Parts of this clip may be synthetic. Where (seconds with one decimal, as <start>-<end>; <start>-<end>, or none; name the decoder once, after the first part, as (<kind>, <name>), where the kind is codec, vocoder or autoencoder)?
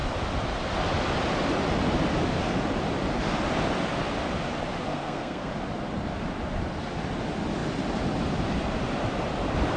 4.9-5.5 (codec, SNAC)